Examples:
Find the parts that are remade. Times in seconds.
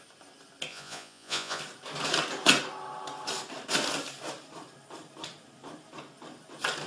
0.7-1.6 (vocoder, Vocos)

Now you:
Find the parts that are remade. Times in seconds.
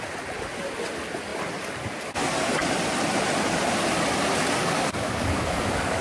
4.6-6.0 (codec, DAC)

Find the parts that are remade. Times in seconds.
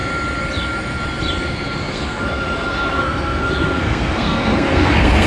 1.9-5.3 (codec, SNAC)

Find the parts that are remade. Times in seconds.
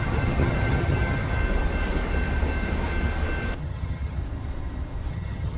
0.0-1.4 (vocoder, HiFi-GAN); 3.6-4.2; 5.1-5.6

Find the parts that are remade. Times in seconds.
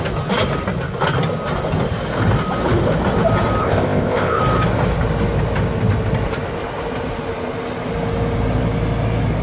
3.6-4.4 (codec, ZipCodec)